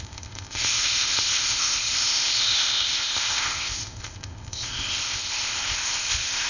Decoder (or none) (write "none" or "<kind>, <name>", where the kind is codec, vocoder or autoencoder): codec, ZipCodec